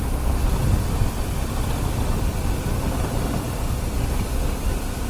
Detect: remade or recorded recorded